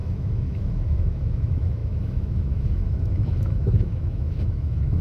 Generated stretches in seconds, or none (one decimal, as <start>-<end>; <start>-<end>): 0.0-5.0